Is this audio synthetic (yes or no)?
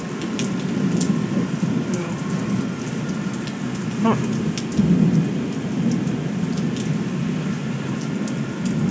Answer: no